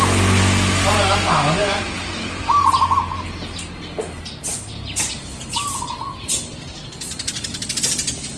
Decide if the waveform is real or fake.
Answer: real